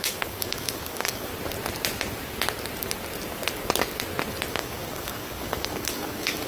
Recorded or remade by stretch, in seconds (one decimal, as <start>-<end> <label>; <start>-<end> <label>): 0.0-1.3 remade; 1.3-4.5 recorded; 4.5-6.5 remade